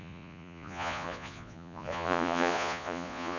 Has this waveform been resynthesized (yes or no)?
yes